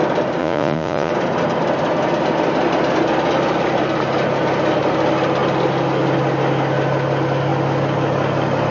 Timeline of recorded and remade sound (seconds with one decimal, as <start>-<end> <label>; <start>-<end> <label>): 0.0-0.4 recorded; 0.4-1.1 remade; 1.1-8.7 recorded